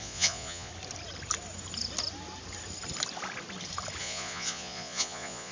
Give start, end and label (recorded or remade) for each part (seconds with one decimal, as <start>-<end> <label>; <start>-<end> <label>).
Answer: 0.0-0.7 remade; 0.7-4.0 recorded; 4.0-5.5 remade